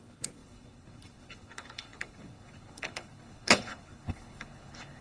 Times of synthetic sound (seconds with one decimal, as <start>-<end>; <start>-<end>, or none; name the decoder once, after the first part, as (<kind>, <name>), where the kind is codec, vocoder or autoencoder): 0.0-5.0 (codec, HILCodec)